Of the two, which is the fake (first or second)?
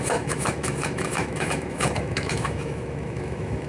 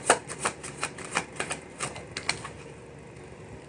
first